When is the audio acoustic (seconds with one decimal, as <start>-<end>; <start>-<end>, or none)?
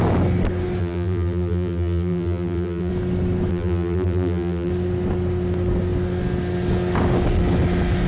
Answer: 0.0-0.8; 2.9-3.5; 4.7-8.1